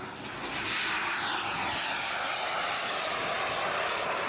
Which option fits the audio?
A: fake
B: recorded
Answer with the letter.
B